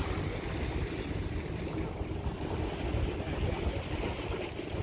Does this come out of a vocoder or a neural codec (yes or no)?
no